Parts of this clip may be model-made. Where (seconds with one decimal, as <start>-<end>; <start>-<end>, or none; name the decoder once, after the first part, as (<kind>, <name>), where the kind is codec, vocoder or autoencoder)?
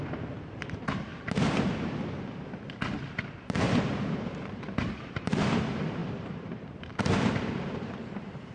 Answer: 0.0-1.1 (vocoder, BigVGAN v2); 3.0-8.5